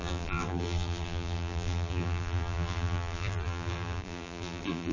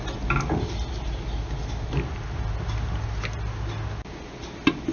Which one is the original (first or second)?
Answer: second